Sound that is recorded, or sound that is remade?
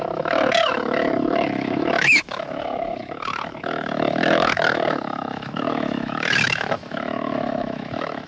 remade